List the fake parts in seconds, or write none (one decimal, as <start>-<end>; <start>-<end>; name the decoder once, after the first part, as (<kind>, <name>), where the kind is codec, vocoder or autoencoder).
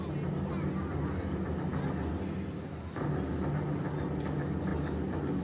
none